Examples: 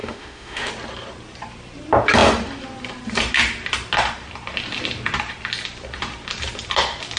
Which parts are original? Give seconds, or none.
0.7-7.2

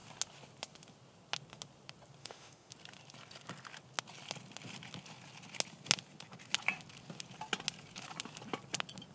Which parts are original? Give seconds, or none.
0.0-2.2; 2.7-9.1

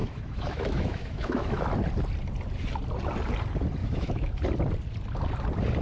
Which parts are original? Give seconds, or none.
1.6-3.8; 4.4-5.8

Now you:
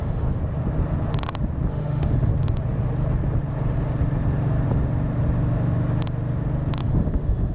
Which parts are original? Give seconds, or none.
0.4-1.7; 2.3-6.8